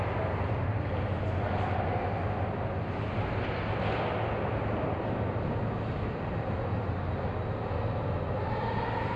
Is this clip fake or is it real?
real